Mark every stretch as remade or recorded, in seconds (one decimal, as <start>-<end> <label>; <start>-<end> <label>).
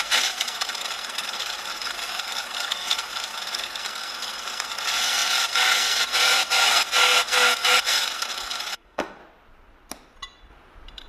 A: 0.0-9.2 remade; 9.2-11.1 recorded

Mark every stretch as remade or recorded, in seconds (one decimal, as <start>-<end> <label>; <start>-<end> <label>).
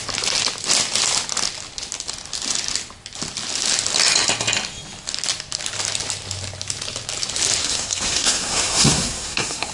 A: 0.0-7.6 recorded; 7.6-9.7 remade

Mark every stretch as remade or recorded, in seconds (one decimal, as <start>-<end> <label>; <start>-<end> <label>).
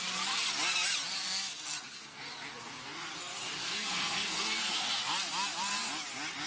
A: 0.0-1.5 recorded; 1.5-2.2 remade; 2.2-3.6 recorded; 3.6-5.0 remade; 5.0-6.5 recorded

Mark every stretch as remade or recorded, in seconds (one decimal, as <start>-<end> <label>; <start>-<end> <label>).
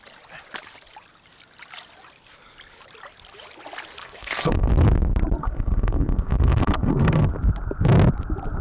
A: 0.0-4.0 recorded; 4.0-4.7 remade; 4.7-5.4 recorded; 5.4-7.3 remade; 7.3-8.6 recorded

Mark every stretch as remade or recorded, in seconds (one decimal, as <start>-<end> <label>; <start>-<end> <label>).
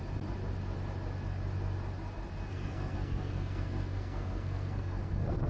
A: 0.0-2.5 recorded; 2.5-5.5 remade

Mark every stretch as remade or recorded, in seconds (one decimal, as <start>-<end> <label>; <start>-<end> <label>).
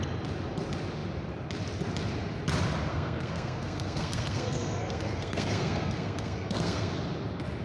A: 0.0-2.9 recorded; 2.9-6.9 remade; 6.9-7.6 recorded